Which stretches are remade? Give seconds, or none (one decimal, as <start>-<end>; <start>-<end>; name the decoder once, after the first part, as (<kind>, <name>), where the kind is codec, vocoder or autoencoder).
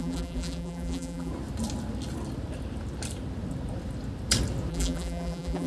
0.0-1.3 (vocoder, BigVGAN v2); 4.7-5.7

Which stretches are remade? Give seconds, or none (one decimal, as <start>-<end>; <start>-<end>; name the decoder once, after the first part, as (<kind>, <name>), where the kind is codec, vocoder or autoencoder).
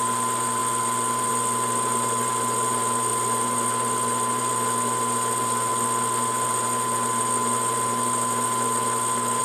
none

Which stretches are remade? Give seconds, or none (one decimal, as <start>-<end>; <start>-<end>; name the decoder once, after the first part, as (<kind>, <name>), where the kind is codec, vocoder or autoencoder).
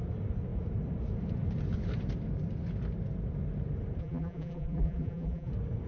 4.0-5.5 (vocoder, BigVGAN v2)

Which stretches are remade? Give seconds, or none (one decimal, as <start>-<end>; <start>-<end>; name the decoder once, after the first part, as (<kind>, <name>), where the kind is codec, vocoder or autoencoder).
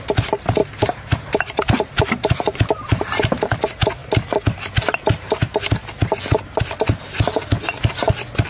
0.6-3.5 (vocoder, BigVGAN v2)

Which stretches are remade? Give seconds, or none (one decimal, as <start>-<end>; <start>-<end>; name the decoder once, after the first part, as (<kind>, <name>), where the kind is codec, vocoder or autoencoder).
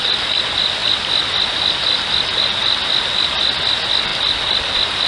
none